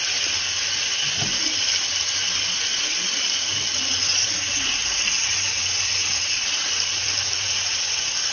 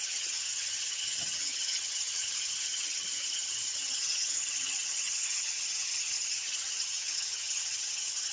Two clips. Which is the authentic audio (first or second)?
first